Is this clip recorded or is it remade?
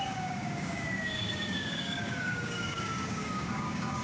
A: remade